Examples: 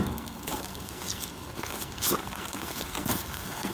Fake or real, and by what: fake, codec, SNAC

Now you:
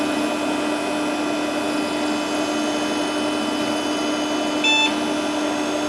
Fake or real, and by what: real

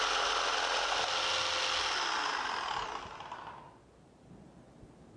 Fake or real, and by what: real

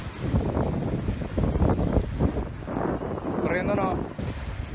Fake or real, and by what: real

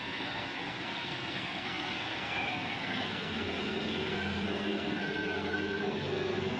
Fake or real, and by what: fake, codec, SNAC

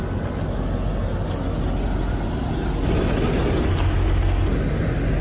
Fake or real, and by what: real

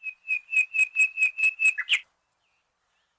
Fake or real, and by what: real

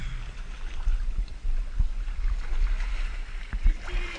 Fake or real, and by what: real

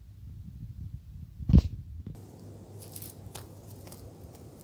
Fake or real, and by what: real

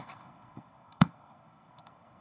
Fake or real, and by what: fake, codec, SNAC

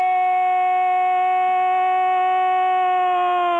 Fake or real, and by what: real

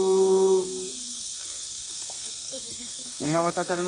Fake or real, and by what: fake, codec, SNAC